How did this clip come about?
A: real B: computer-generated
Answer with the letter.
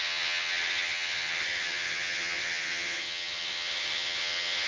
B